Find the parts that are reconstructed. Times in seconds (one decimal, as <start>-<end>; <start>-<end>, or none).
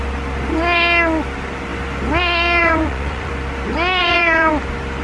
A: 2.6-3.3; 4.0-4.5